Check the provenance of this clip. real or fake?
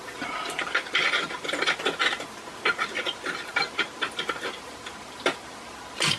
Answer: real